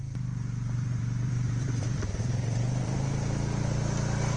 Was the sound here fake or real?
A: fake